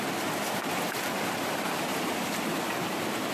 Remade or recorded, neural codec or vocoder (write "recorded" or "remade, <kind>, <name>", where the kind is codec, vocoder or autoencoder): recorded